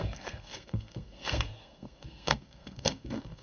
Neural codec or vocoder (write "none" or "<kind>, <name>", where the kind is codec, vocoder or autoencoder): codec, SNAC